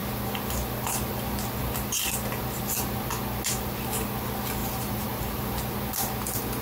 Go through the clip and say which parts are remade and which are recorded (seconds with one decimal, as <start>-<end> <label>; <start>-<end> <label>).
0.0-4.6 recorded; 4.6-5.6 remade; 5.6-6.6 recorded